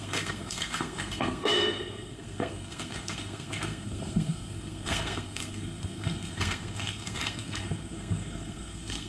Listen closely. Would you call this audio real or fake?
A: fake